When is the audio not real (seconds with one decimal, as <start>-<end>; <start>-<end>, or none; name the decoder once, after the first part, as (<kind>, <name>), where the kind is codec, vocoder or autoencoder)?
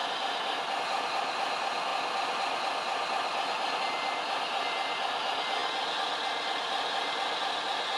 none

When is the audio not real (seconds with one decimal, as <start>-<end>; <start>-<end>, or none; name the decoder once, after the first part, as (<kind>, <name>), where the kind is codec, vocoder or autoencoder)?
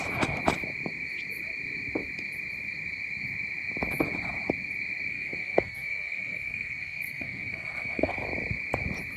5.1-8.1 (codec, SNAC)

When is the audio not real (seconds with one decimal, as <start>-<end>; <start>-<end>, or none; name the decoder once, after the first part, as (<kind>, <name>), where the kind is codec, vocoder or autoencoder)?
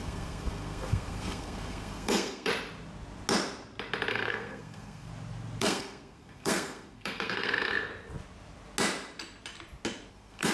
0.0-2.5 (codec, SNAC); 4.1-5.1; 5.6-7.9; 10.1-10.5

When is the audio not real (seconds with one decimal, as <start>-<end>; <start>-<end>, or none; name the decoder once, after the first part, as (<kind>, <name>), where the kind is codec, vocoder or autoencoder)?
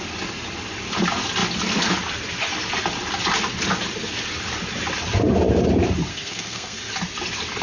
6.1-6.9 (codec, SNAC)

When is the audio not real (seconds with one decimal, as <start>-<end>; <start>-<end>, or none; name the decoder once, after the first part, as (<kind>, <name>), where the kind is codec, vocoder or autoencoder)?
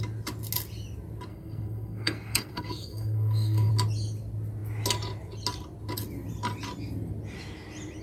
1.3-3.7 (codec, SNAC)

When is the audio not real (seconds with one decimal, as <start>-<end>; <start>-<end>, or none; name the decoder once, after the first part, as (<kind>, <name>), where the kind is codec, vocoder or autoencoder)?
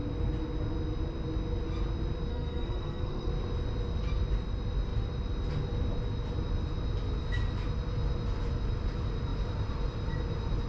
2.3-3.3 (codec, SNAC)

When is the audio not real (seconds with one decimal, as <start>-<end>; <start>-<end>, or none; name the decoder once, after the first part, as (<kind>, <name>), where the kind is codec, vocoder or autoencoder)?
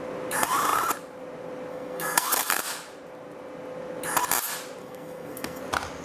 1.7-2.6 (codec, SNAC); 4.8-5.6